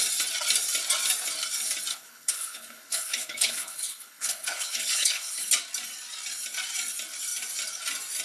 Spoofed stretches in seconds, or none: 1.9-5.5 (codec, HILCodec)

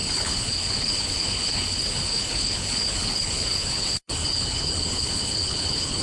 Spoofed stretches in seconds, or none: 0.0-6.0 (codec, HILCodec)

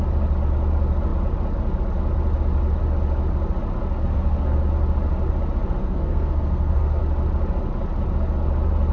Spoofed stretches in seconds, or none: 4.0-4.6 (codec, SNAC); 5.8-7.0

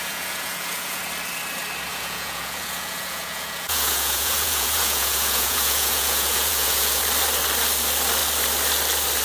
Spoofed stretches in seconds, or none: 0.0-1.0 (vocoder, Vocos); 1.9-7.0

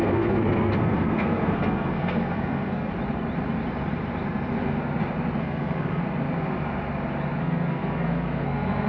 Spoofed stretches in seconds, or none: 0.0-2.9 (codec, SNAC); 5.4-6.0; 7.4-8.9

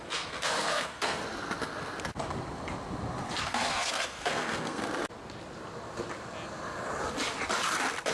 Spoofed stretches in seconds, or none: 0.0-1.2 (codec, SNAC); 3.4-4.8